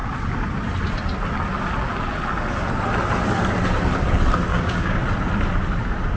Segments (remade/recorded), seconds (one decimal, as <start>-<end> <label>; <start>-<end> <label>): 0.0-4.5 recorded; 4.5-5.0 remade; 5.0-6.2 recorded